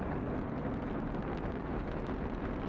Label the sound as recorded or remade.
recorded